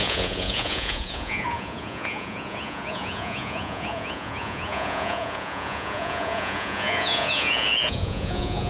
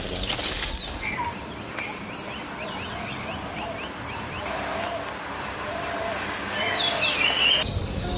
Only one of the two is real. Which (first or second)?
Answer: second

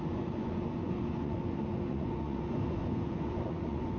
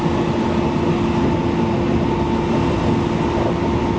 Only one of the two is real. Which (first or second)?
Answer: second